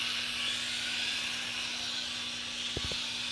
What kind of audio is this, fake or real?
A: real